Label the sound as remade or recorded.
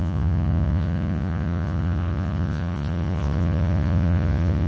remade